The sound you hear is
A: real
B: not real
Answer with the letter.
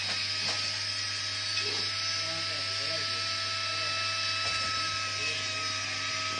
A